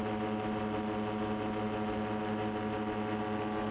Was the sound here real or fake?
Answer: real